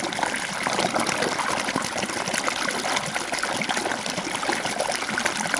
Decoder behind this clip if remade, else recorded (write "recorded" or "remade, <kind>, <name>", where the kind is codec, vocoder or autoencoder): recorded